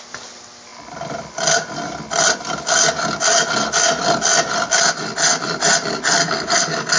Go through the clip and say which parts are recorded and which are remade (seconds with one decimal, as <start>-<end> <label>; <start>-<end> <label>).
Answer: 0.0-6.2 recorded; 6.2-7.0 remade